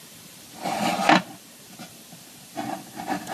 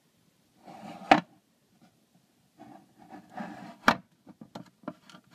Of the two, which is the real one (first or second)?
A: second